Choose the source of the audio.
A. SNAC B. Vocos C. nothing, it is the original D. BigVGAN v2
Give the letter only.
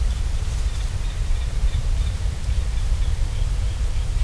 D